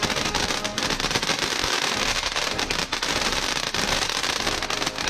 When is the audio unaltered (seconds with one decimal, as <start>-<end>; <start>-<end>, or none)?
0.0-3.3; 4.3-5.1